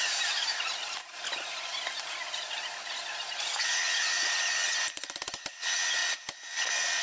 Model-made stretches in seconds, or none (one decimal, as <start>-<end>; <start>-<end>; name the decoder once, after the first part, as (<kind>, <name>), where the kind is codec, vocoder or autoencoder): none